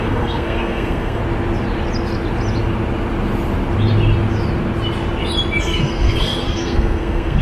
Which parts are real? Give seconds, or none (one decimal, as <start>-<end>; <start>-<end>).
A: 1.2-5.6